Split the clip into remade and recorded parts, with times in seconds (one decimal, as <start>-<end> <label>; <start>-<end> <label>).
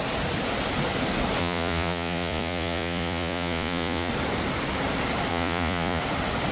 0.0-1.4 recorded; 1.4-4.1 remade; 4.1-5.3 recorded; 5.3-6.0 remade; 6.0-6.5 recorded